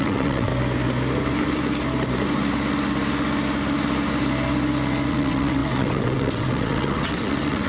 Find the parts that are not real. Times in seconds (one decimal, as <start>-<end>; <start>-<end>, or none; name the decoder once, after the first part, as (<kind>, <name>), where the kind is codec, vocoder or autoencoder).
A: 0.0-0.5 (vocoder, WaveNeXt); 5.1-7.7